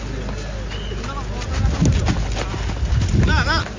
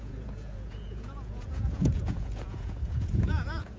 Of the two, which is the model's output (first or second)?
second